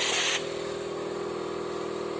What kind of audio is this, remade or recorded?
recorded